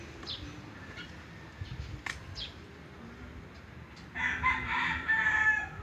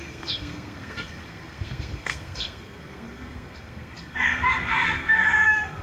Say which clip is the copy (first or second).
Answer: second